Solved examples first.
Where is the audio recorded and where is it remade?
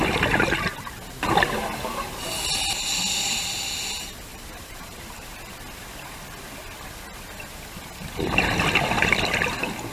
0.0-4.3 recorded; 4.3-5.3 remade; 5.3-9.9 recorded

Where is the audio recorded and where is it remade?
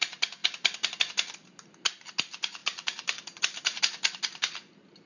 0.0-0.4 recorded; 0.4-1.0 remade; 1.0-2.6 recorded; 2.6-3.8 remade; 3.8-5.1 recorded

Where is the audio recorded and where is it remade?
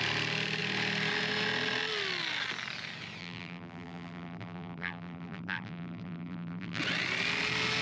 0.0-3.2 recorded; 3.2-6.8 remade; 6.8-7.8 recorded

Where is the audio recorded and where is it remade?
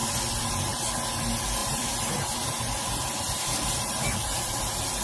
0.0-0.5 remade; 0.5-1.6 recorded; 1.6-4.6 remade; 4.6-5.0 recorded